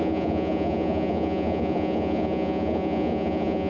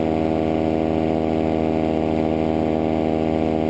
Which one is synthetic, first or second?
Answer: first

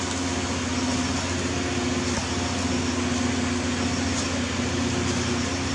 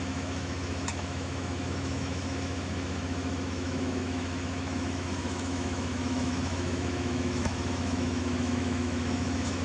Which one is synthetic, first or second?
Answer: second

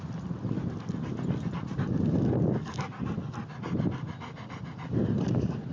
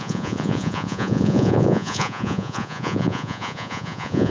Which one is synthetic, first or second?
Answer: second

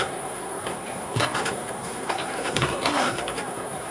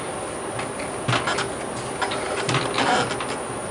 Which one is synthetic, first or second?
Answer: first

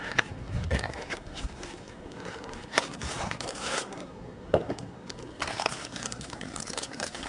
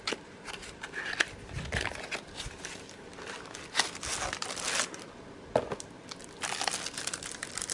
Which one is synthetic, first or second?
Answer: first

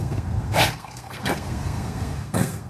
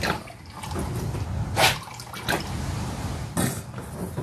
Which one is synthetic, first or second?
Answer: first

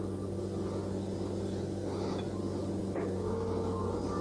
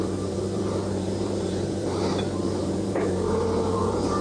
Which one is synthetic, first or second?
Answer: second